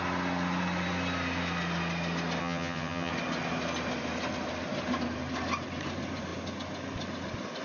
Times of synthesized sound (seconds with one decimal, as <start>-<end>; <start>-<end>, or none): 2.4-3.1